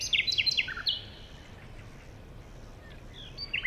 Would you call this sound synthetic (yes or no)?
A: no